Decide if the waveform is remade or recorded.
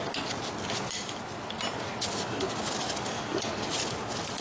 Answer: recorded